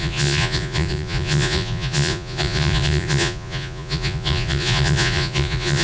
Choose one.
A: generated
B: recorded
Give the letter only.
A